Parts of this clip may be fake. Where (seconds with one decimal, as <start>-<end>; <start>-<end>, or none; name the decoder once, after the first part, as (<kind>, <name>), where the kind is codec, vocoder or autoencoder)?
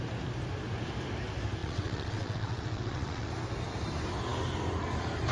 1.6-3.3 (vocoder, WaveNeXt)